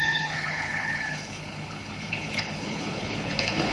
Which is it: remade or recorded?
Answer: remade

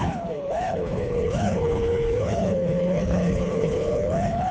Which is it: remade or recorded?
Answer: remade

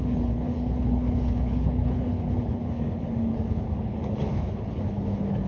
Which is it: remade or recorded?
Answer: remade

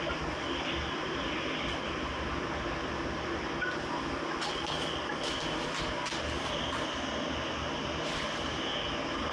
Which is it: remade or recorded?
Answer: recorded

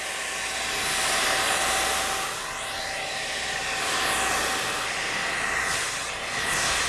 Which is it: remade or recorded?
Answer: recorded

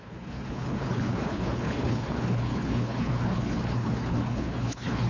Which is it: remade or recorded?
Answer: remade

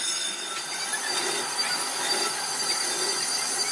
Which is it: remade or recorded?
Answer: recorded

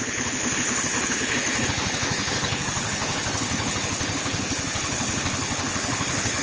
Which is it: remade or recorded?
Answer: remade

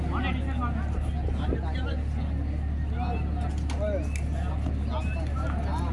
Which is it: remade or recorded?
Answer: recorded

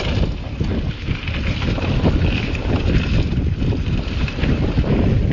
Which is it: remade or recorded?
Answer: recorded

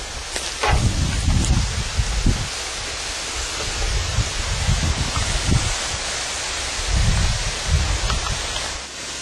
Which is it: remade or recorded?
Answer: recorded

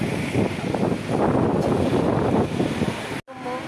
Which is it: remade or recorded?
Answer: recorded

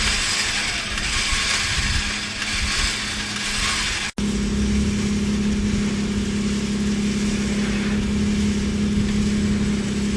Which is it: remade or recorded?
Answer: recorded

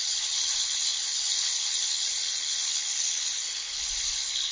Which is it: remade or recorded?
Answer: remade